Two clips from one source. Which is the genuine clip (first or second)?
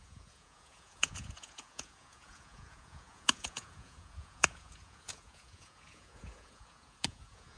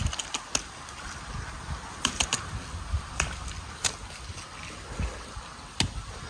second